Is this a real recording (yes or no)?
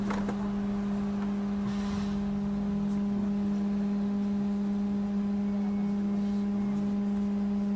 yes